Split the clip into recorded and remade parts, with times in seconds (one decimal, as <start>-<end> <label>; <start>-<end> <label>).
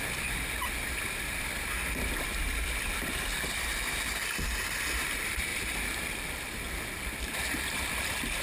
0.0-8.4 recorded